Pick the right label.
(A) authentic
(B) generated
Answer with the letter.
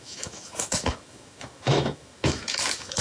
B